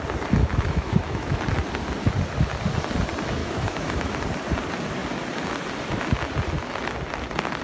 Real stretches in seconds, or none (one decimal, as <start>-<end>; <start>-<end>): 0.0-0.4; 1.4-3.4; 4.2-7.6